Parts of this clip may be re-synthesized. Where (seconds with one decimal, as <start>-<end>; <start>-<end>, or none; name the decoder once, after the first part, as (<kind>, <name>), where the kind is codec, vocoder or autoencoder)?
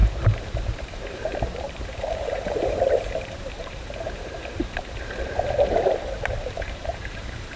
0.0-7.6 (vocoder, BigVGAN v2)